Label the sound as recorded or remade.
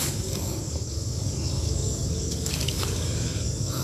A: remade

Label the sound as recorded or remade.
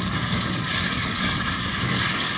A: remade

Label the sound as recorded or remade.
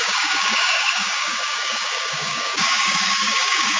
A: remade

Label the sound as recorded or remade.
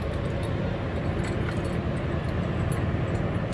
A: recorded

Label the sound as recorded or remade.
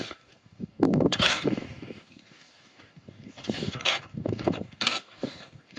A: remade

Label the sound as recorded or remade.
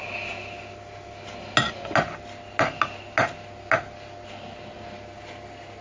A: recorded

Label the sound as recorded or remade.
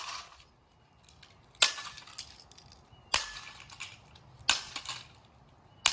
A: recorded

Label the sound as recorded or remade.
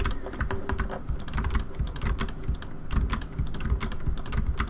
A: recorded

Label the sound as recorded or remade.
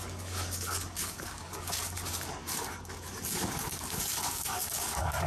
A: remade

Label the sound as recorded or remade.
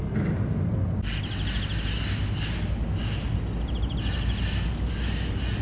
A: recorded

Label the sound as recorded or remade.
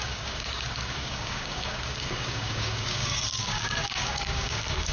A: remade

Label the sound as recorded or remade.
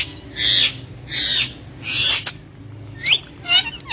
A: recorded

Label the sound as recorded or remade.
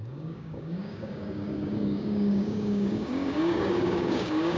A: remade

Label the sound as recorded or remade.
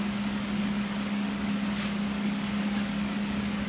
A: remade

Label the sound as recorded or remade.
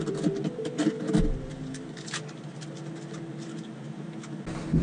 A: recorded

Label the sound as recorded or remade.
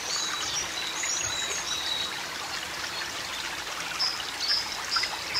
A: recorded